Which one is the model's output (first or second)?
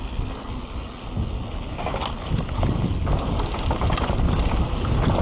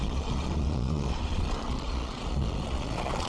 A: second